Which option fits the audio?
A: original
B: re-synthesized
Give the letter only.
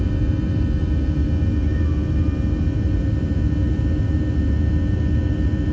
B